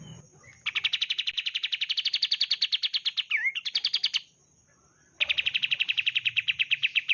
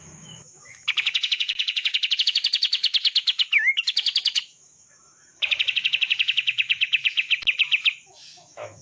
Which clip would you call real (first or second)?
first